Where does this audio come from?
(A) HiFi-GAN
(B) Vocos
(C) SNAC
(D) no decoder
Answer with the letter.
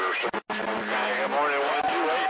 D